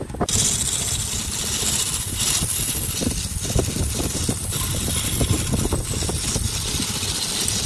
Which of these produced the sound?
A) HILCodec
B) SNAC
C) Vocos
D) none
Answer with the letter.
D